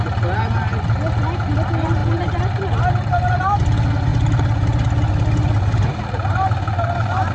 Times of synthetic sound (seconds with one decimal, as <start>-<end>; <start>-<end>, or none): 4.1-7.3